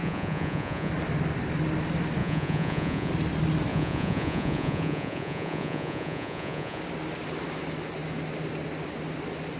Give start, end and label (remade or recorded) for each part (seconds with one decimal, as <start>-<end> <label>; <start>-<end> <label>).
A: 0.0-0.9 remade; 0.9-2.2 recorded; 2.2-3.1 remade; 3.1-3.7 recorded; 3.7-6.8 remade; 6.8-9.6 recorded